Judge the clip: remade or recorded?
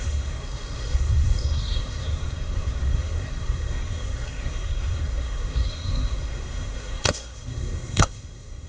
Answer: remade